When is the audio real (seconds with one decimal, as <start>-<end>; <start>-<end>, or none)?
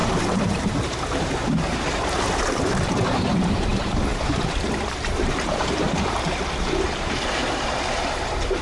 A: none